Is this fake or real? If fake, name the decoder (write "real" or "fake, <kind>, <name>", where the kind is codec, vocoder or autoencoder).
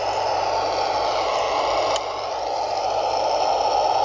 real